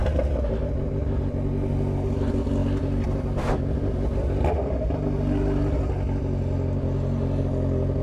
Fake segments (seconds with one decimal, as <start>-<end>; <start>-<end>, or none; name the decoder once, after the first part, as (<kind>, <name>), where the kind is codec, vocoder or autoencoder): none